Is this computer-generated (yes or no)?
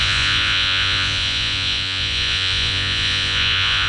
yes